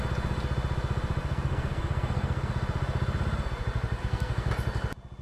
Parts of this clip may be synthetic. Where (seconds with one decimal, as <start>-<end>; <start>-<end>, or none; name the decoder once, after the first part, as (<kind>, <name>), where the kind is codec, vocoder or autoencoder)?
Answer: 1.2-2.5 (codec, SNAC); 4.0-4.5